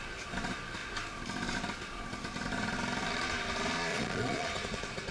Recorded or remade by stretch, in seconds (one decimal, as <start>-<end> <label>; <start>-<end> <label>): 0.0-3.9 recorded; 3.9-5.1 remade

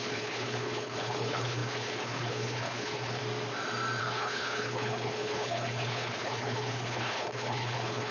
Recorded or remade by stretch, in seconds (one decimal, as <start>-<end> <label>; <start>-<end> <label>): 0.0-3.2 remade; 3.2-4.0 recorded; 4.0-8.1 remade

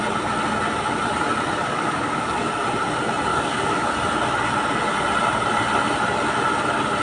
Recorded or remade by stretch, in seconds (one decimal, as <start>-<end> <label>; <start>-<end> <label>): 0.0-1.6 recorded; 1.6-2.5 remade; 2.5-3.3 recorded; 3.3-3.9 remade; 3.9-7.0 recorded